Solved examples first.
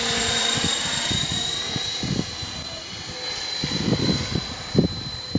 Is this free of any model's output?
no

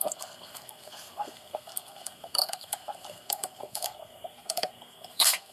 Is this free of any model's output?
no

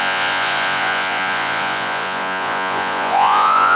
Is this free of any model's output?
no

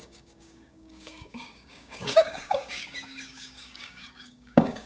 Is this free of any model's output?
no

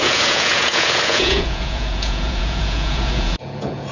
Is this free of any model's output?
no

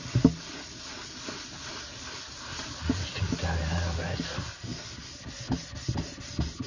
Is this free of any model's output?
yes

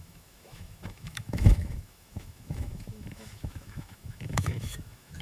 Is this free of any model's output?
no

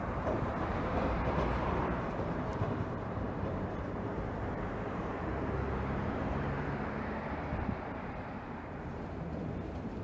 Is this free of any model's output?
no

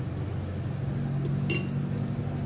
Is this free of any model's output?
yes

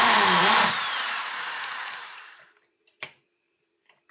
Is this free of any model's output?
no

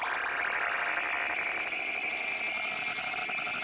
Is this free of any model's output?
yes